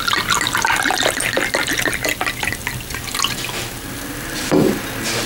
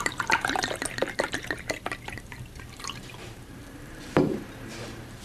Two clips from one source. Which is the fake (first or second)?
second